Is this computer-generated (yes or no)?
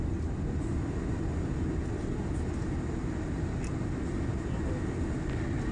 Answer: no